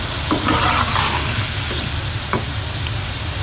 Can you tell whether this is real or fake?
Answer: real